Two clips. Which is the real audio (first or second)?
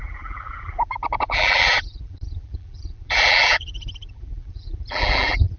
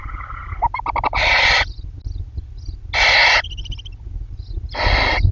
second